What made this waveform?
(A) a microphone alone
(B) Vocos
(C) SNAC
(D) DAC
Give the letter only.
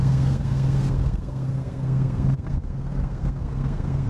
C